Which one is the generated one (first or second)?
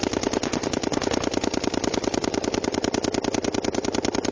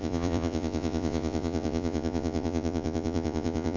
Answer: second